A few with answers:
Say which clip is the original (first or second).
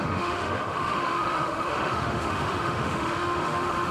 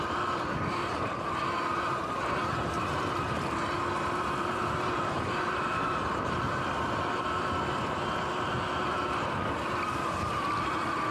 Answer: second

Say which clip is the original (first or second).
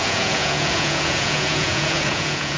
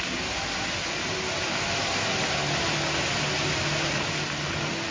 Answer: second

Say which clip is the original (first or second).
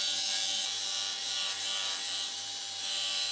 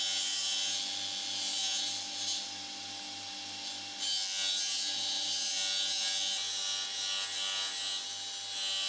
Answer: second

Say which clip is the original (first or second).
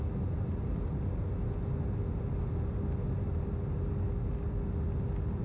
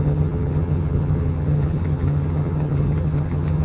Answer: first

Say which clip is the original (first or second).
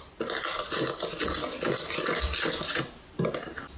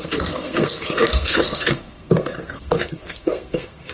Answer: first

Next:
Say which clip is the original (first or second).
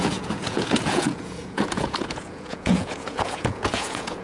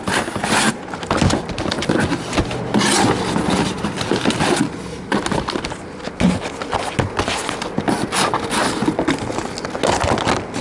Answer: second